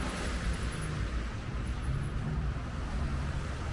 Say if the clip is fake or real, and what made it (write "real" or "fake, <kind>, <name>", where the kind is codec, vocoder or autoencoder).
real